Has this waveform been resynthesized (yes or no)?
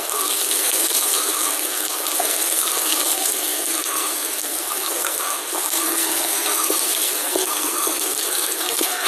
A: yes